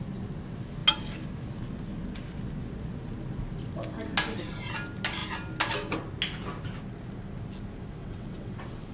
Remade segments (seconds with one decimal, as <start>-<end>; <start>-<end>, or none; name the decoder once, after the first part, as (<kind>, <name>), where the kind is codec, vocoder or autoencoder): 8.0-8.9 (vocoder, WaveNeXt)